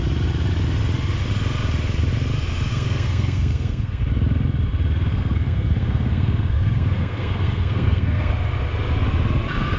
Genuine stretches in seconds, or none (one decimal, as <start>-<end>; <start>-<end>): 0.0-2.7; 4.0-5.1; 8.3-9.8